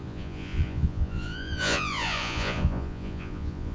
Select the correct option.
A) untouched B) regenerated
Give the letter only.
B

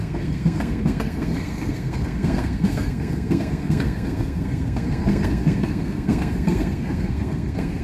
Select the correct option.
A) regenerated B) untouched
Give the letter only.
A